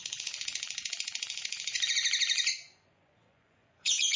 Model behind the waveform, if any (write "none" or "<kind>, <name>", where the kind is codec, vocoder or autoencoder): vocoder, Vocos